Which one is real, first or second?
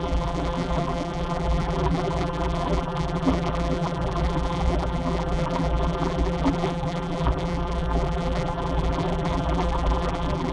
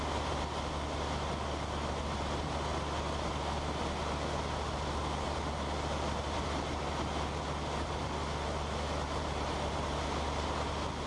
second